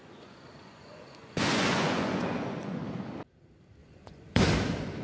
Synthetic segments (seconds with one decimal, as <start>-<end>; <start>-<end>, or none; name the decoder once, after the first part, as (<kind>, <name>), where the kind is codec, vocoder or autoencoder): 0.0-2.8 (vocoder, Vocos); 3.8-4.4